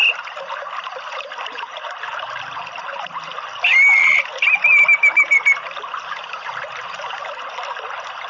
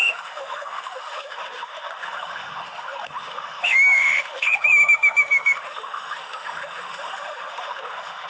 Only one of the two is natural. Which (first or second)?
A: first